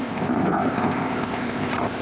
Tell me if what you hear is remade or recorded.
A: remade